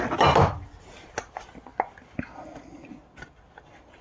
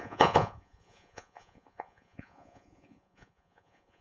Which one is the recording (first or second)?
first